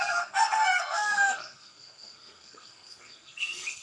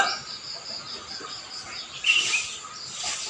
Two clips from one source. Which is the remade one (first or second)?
first